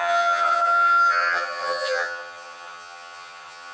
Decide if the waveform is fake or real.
fake